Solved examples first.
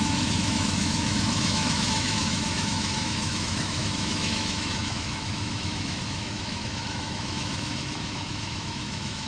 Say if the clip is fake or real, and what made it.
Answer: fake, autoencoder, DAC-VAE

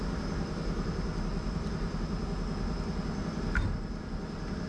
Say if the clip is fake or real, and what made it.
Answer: real